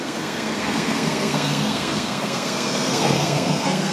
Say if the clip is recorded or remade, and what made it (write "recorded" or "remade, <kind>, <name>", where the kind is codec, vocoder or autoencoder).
remade, codec, SNAC